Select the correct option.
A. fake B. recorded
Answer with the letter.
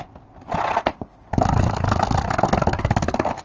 B